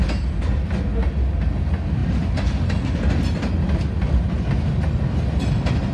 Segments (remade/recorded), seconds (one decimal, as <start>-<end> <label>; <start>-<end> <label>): 0.0-5.9 recorded